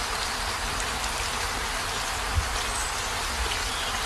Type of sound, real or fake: real